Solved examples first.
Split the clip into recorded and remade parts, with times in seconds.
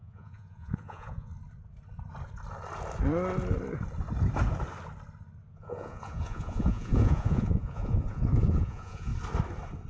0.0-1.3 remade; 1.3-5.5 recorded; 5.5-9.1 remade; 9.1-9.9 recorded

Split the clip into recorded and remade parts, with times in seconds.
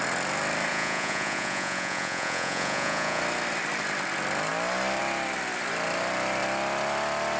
0.0-0.7 recorded; 0.7-3.2 remade; 3.2-7.4 recorded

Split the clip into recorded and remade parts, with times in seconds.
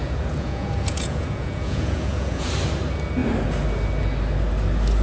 0.0-2.5 remade; 2.5-5.0 recorded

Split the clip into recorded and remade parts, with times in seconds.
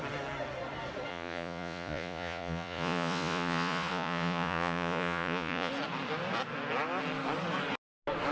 0.0-1.1 recorded; 1.1-5.7 remade; 5.7-8.3 recorded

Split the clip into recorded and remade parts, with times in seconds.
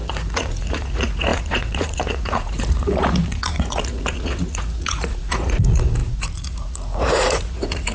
0.0-7.9 remade